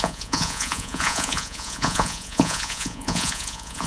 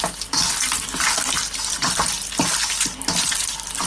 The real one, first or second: second